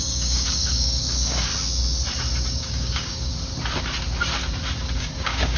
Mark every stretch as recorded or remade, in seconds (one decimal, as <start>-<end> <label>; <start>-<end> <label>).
0.0-1.5 remade; 1.5-2.6 recorded; 2.6-3.3 remade; 3.3-5.0 recorded; 5.0-5.6 remade